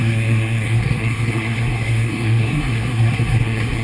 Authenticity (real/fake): fake